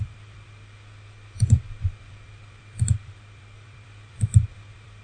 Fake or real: fake